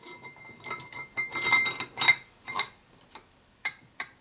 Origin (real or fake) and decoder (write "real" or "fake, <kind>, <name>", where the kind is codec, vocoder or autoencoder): real